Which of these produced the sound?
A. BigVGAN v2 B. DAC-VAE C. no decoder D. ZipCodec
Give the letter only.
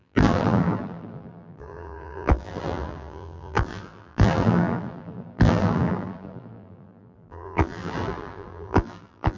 A